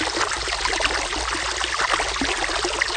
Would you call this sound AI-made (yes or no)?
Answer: no